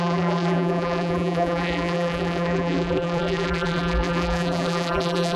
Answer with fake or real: fake